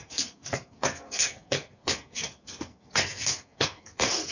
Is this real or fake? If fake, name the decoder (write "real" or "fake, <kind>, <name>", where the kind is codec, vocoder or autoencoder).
fake, codec, SNAC